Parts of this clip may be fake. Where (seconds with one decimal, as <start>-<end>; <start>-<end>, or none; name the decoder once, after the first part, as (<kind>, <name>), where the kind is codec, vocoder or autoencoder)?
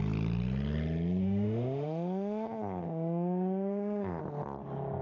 1.2-4.2 (autoencoder, DAC-VAE)